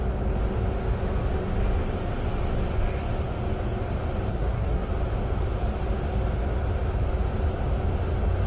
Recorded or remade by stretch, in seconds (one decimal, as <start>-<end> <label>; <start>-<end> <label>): 0.0-4.3 recorded; 4.3-4.9 remade; 4.9-8.5 recorded